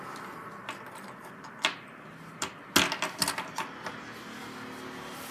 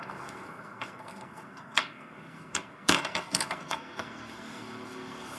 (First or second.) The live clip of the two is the first